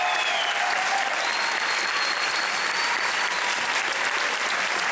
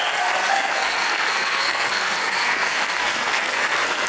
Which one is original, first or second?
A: first